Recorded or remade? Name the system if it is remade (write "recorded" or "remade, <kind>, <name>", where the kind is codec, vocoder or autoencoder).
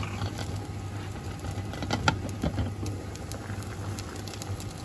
recorded